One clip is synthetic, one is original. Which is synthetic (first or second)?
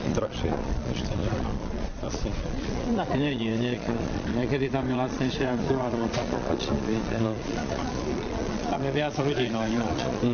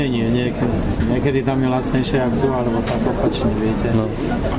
first